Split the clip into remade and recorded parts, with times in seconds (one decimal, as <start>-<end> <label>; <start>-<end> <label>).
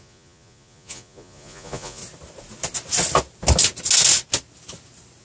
0.0-2.0 remade; 2.0-5.2 recorded